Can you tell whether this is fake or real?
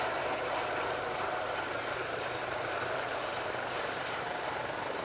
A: fake